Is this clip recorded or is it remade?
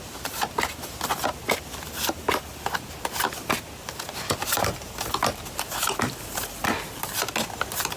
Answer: recorded